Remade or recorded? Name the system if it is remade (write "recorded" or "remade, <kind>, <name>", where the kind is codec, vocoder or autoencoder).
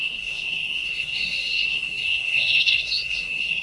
remade, codec, SNAC